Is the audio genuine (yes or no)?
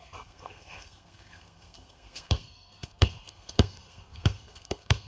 no